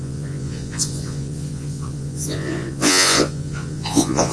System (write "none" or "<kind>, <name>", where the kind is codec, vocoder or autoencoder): vocoder, Vocos